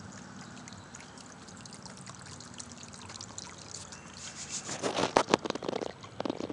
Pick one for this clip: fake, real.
real